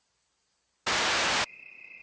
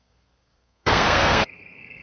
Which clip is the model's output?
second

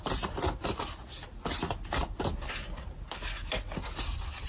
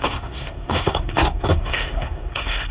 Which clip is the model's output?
second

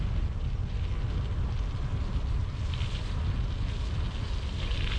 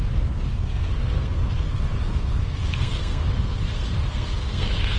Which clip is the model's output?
second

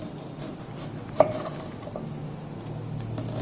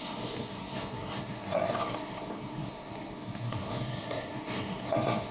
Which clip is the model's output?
second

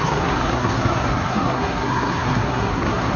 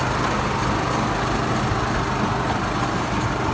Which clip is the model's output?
first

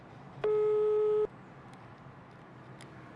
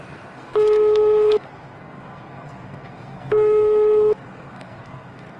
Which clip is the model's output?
second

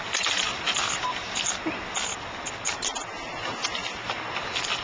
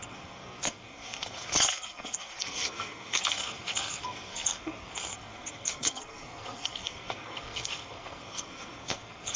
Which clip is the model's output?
second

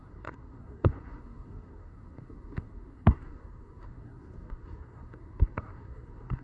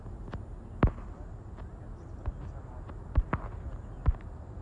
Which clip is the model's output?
first